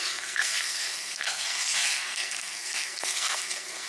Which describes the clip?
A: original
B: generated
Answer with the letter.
B